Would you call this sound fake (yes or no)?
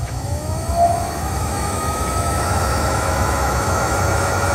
yes